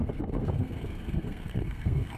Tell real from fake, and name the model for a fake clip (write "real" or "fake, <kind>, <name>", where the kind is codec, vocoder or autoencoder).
fake, codec, SNAC